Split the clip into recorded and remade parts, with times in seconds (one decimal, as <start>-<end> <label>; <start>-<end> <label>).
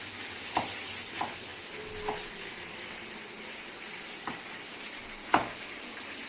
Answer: 0.0-6.3 recorded